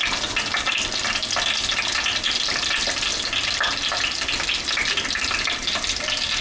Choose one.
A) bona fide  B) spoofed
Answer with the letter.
A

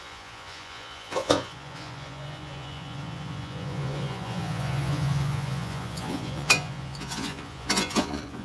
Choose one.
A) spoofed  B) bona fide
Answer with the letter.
A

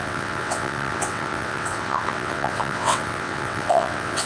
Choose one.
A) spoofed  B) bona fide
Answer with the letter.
A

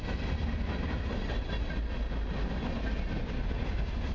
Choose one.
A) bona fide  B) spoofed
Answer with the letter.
A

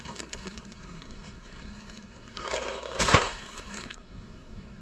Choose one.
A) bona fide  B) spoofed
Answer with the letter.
B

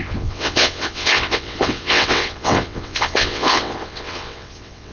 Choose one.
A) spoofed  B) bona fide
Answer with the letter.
A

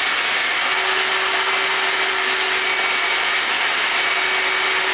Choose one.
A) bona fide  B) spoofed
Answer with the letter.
A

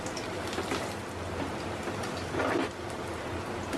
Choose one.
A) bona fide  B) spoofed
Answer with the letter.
A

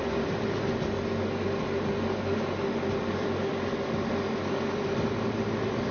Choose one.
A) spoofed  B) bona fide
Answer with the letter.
B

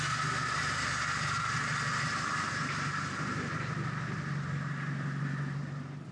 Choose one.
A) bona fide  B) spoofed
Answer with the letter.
A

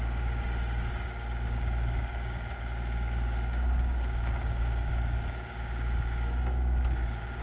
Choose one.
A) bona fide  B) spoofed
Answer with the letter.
B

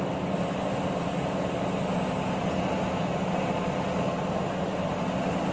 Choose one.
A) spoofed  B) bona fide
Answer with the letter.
B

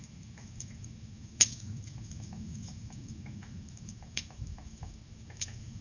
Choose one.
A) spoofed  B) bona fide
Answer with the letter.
A